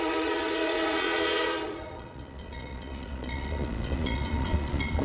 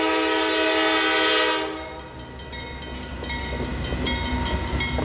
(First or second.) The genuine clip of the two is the second